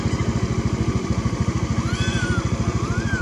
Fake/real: real